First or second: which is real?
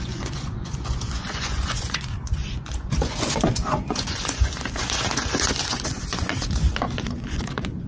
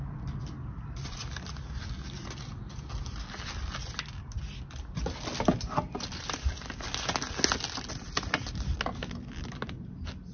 second